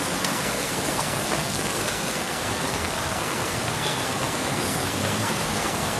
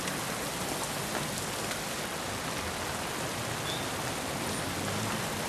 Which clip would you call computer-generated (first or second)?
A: first